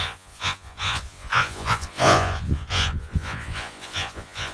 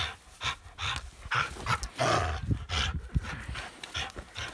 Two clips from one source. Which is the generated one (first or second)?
first